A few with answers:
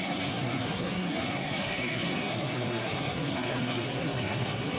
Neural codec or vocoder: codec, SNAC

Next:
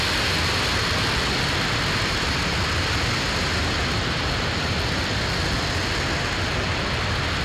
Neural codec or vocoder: none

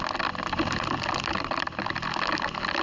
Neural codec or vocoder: none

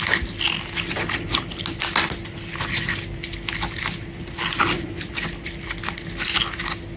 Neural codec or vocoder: none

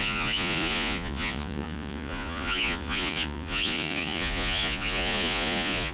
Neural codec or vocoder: vocoder, Vocos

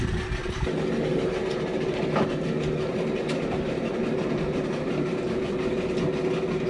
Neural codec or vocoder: none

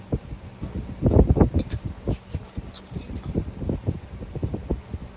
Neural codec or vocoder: none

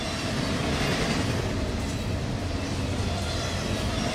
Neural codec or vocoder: none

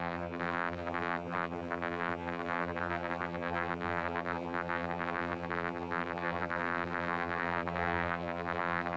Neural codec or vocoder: vocoder, BigVGAN v2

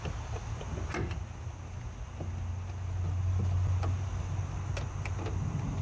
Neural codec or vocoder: none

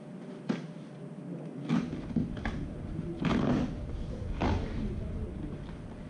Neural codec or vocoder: none